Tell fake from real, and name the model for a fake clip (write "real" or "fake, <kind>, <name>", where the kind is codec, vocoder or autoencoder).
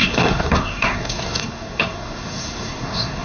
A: fake, codec, SNAC